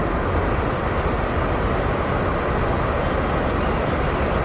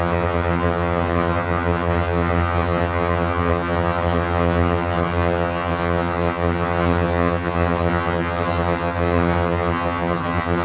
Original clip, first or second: first